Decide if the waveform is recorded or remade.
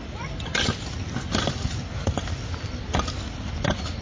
recorded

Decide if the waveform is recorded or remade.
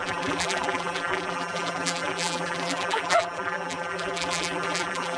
remade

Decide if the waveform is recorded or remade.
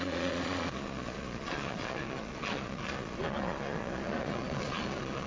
remade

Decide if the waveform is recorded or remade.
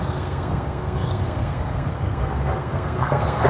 remade